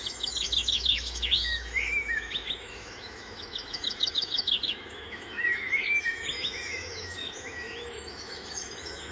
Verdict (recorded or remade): remade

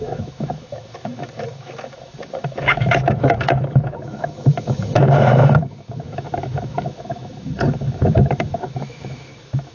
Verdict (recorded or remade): remade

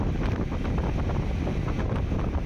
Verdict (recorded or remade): recorded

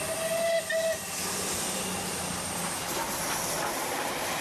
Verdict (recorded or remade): recorded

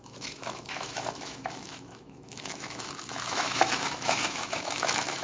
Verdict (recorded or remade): remade